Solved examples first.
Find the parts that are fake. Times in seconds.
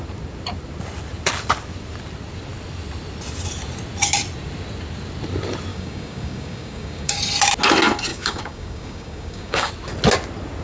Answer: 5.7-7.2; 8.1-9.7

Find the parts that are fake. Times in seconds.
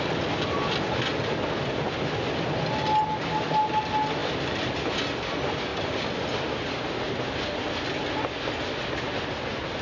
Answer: none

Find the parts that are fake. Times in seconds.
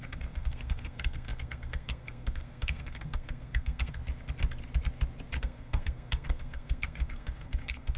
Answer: 0.0-4.0; 5.4-8.0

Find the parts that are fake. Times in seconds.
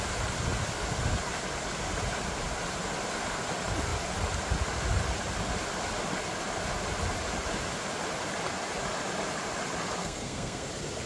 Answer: 10.0-10.7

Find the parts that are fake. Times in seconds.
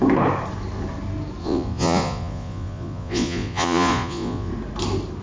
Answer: 1.4-4.5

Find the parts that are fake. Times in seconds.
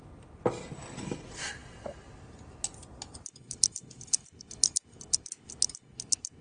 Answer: none